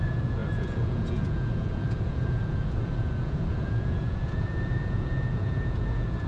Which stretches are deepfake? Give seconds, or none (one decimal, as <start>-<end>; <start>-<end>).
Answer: 0.0-6.3

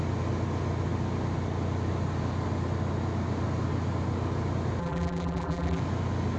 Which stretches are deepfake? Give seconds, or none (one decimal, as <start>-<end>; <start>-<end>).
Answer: 4.8-5.8

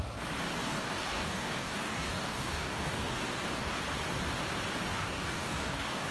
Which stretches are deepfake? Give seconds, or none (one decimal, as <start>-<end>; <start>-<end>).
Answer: 0.6-3.8; 4.9-6.1